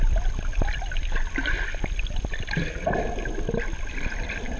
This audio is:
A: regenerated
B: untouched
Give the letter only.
A